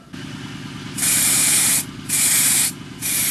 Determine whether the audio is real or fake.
real